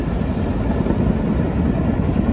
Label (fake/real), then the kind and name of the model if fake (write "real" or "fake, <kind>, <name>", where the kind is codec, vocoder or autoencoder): real